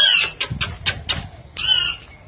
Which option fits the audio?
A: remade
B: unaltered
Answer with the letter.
B